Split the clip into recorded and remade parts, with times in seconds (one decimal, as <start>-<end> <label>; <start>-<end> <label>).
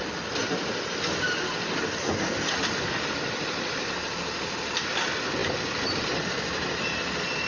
0.0-7.5 recorded